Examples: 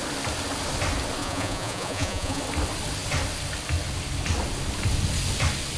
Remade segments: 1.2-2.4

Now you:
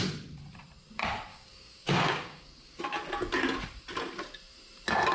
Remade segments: 1.3-2.8

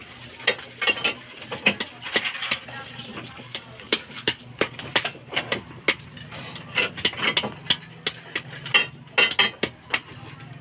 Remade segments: 3.1-5.4

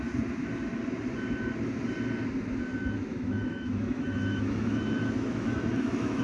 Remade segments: 3.1-6.2

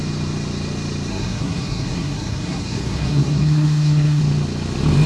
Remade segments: 1.1-4.2

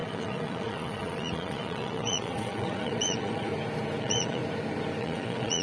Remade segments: 0.0-3.5; 4.0-4.4; 5.0-5.6

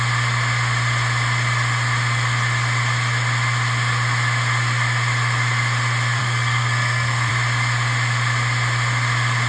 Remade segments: 6.2-7.3

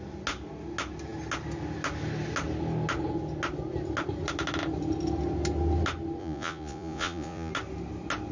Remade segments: 6.2-7.5